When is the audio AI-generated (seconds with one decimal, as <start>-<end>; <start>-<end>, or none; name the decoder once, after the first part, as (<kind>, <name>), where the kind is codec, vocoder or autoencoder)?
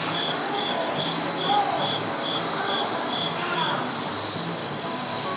0.4-1.3 (codec, DAC); 4.6-5.4